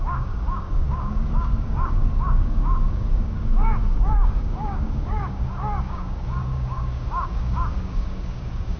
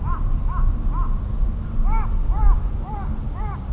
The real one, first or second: second